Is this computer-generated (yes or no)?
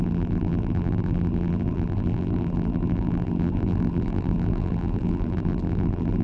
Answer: yes